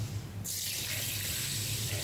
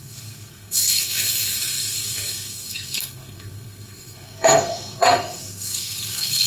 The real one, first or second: first